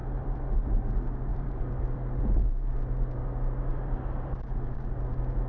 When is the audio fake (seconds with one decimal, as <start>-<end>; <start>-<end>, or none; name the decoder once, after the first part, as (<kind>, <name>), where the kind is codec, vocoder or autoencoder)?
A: 0.0-0.7 (vocoder, BigVGAN v2); 1.3-2.4; 3.7-4.3